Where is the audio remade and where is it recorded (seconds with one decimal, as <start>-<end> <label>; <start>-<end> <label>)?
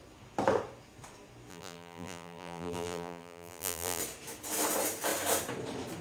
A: 0.0-1.5 recorded; 1.5-4.0 remade; 4.0-6.0 recorded